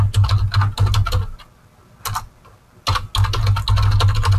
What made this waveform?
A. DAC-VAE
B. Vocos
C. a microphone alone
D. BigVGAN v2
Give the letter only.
C